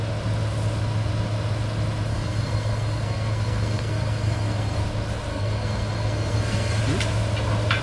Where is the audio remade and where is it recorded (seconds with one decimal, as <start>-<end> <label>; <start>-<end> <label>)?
0.0-2.1 recorded; 2.1-4.8 remade; 4.8-5.3 recorded; 5.3-6.8 remade; 6.8-7.8 recorded